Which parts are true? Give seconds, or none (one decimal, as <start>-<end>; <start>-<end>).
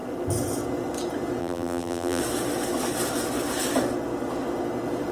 0.0-1.4; 2.2-5.1